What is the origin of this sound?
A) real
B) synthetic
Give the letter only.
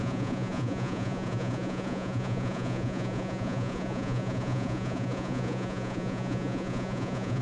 B